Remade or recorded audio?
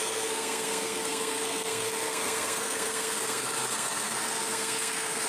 remade